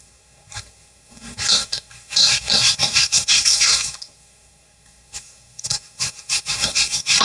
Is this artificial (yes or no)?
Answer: yes